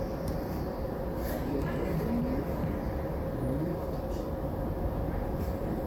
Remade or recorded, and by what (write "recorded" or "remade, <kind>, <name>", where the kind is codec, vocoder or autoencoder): recorded